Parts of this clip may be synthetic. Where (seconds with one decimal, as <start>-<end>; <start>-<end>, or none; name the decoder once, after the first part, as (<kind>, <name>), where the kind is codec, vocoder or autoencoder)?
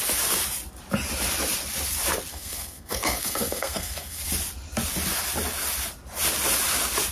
2.3-4.2 (codec, SNAC)